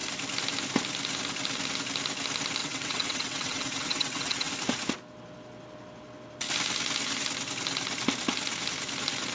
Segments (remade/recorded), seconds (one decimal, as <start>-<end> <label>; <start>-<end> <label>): 0.0-2.6 recorded; 2.6-4.5 remade; 4.5-9.3 recorded